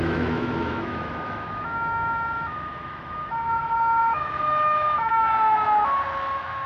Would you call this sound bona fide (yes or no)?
no